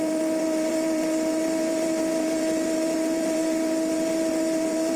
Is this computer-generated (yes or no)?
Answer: yes